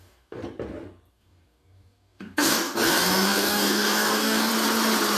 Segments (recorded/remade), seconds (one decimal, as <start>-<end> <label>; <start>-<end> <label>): 0.0-0.4 remade; 0.4-1.1 recorded; 1.1-4.5 remade; 4.5-5.2 recorded